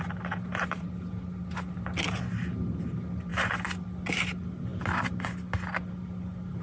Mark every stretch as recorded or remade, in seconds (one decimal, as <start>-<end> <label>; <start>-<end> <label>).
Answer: 0.0-6.6 recorded